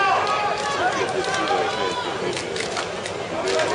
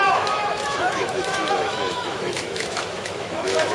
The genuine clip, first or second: first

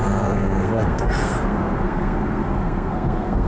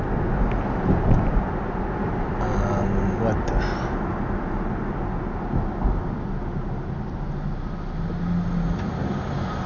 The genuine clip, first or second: second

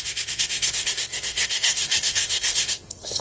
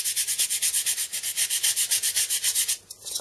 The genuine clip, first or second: second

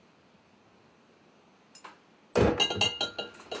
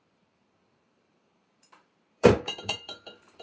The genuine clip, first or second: first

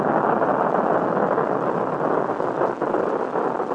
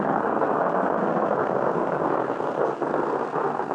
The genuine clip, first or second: first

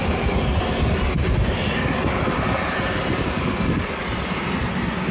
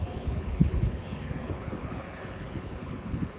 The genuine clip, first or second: first